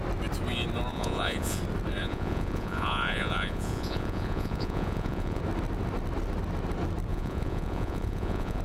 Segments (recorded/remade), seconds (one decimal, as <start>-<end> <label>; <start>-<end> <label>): 0.0-0.9 recorded; 0.9-1.6 remade; 1.6-2.0 recorded; 2.0-5.4 remade; 5.4-7.1 recorded; 7.1-8.6 remade